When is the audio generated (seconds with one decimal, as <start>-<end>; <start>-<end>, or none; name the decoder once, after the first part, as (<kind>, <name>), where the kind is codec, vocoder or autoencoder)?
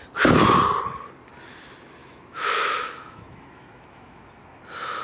2.0-4.6 (autoencoder, DAC-VAE)